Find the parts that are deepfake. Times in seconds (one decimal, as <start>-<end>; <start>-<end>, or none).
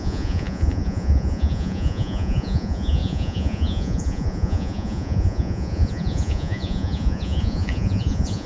0.0-8.5